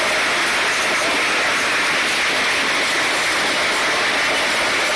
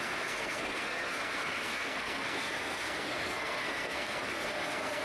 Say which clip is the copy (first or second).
second